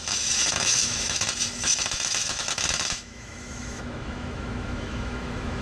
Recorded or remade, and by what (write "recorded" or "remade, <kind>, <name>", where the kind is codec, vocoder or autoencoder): remade, autoencoder, DAC-VAE